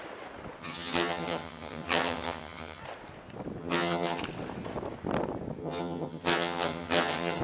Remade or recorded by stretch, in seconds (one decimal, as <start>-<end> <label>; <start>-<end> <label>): 0.0-0.6 recorded; 0.6-2.8 remade; 2.8-3.6 recorded; 3.6-4.2 remade; 4.2-5.6 recorded; 5.6-7.4 remade